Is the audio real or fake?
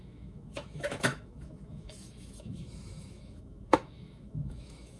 fake